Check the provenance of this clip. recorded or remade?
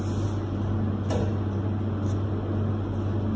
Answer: recorded